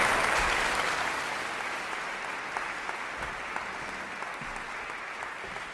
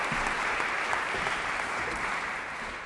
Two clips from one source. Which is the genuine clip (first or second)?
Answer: first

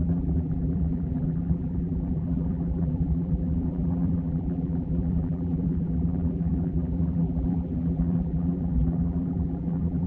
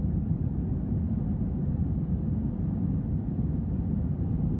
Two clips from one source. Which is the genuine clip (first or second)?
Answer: second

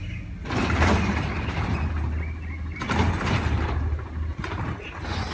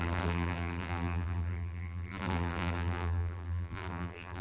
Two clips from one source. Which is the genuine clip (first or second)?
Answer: first